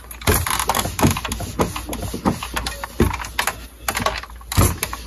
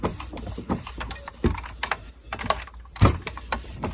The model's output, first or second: second